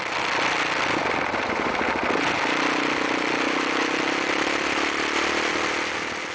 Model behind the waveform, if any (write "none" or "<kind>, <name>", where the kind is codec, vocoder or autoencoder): none